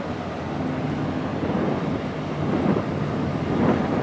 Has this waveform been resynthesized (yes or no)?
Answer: no